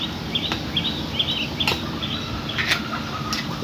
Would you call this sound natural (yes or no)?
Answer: yes